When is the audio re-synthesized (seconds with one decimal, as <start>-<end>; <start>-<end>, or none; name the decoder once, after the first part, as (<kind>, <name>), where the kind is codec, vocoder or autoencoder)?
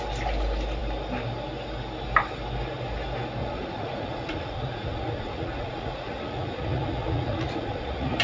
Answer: 3.4-8.2 (vocoder, Vocos)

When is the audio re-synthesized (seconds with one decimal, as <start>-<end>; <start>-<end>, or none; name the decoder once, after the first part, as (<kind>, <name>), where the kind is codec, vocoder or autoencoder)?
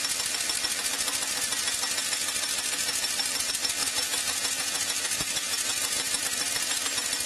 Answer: 3.8-6.2 (vocoder, Vocos)